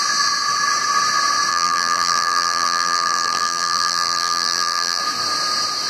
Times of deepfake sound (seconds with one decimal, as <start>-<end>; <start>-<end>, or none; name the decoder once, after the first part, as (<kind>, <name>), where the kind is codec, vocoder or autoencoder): 1.5-5.0 (vocoder, BigVGAN v2)